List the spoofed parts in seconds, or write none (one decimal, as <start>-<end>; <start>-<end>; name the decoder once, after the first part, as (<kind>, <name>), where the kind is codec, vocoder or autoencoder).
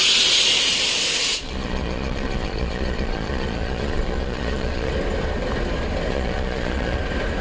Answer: 1.3-4.9 (vocoder, Vocos); 6.1-7.0